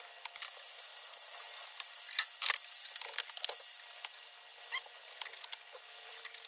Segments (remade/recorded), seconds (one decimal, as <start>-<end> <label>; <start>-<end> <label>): 0.0-6.5 recorded